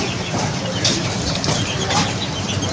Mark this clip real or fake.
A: real